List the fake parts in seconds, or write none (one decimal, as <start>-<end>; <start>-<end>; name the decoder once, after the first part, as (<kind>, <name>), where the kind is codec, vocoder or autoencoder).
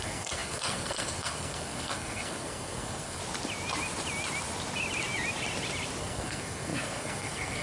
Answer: 0.0-3.2 (codec, SNAC); 6.0-7.6